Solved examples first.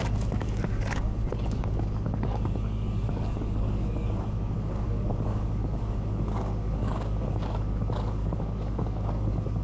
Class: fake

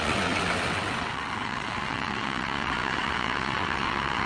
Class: fake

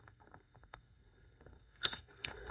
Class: fake